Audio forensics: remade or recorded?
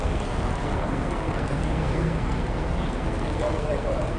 remade